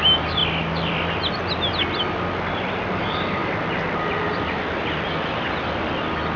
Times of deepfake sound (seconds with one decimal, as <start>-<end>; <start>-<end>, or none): none

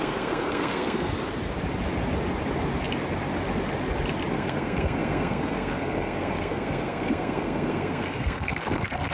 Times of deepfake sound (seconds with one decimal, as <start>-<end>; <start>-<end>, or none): 0.0-1.1; 4.3-9.1

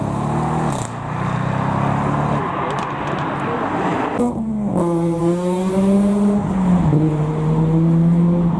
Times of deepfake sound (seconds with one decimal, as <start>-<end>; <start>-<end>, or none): 5.2-5.7